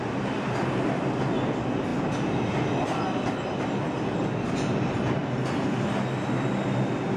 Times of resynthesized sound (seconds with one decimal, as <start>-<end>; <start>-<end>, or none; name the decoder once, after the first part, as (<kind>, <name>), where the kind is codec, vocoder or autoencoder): none